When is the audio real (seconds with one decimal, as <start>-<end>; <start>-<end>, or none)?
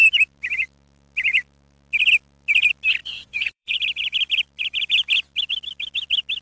0.0-3.0; 3.8-6.4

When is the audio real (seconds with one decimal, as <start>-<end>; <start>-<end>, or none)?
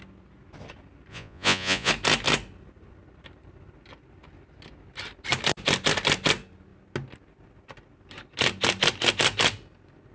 0.0-1.1; 1.9-10.1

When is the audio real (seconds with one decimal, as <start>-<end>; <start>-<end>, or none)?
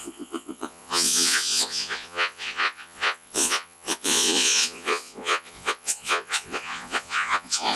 none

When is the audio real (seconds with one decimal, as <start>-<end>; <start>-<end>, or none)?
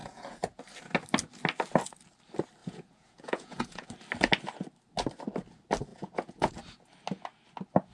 0.6-2.6; 3.9-5.9; 6.5-7.9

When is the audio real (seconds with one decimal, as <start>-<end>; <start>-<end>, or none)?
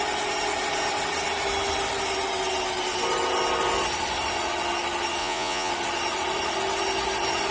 0.0-5.2; 5.7-7.5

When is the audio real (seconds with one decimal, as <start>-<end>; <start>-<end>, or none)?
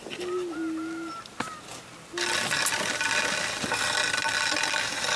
0.0-5.2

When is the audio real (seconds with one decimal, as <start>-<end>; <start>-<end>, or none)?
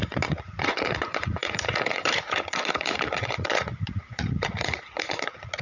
none